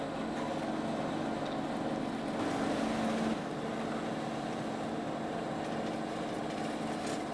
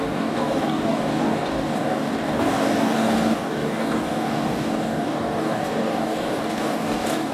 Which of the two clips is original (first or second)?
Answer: first